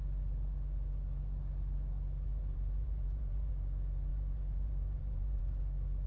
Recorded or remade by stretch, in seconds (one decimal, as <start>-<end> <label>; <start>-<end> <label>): 0.0-2.3 recorded; 2.3-3.5 remade; 3.5-4.1 recorded; 4.1-5.4 remade; 5.4-6.1 recorded